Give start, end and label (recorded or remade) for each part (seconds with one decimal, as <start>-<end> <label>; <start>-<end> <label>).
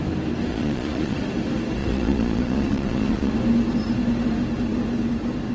0.0-0.5 recorded; 0.5-1.2 remade; 1.2-1.8 recorded; 1.8-3.3 remade; 3.3-5.5 recorded